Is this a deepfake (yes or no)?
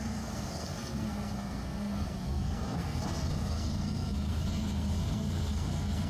yes